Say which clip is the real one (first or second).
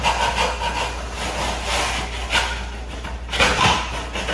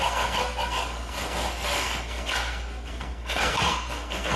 first